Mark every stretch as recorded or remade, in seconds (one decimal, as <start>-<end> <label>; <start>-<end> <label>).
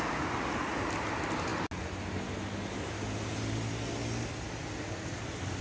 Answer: 0.0-5.6 recorded